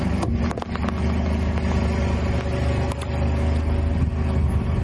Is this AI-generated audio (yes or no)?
no